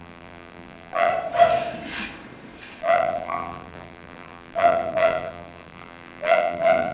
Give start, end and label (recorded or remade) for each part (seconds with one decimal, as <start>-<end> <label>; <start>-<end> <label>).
0.0-1.1 remade; 1.1-2.8 recorded; 2.8-6.9 remade